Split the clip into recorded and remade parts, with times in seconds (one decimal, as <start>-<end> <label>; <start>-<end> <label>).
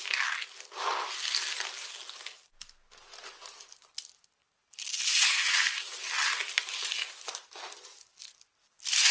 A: 0.0-9.1 recorded